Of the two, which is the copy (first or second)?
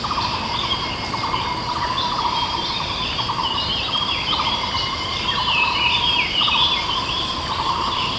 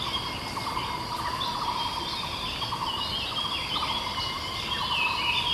first